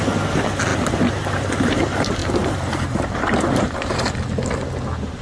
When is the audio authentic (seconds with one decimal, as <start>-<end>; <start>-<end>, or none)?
0.0-0.7; 1.8-2.2; 4.1-5.2